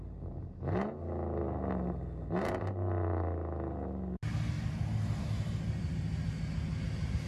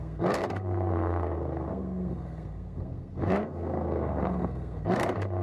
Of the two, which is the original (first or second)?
first